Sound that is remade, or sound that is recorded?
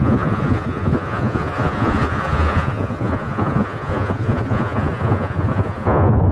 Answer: remade